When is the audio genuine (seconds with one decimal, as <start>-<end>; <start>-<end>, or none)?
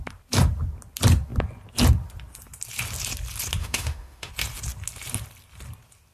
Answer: 0.0-3.6; 4.3-6.1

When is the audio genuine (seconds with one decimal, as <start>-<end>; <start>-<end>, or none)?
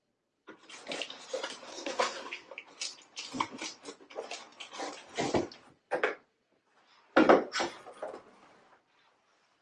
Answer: 0.0-1.7; 2.5-9.6